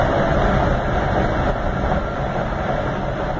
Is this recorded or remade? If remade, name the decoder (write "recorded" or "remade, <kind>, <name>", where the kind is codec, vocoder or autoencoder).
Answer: recorded